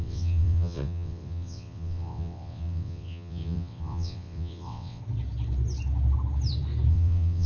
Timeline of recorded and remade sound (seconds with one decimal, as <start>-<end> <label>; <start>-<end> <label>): 0.0-5.0 remade; 5.0-6.9 recorded; 6.9-7.5 remade